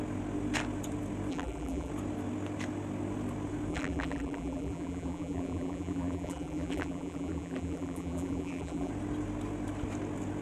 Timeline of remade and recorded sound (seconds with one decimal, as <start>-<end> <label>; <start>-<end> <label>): 0.0-1.3 recorded; 1.3-1.9 remade; 1.9-3.7 recorded; 3.7-8.9 remade; 8.9-10.4 recorded